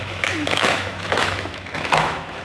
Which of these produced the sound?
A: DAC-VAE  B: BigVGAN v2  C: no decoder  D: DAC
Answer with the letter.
A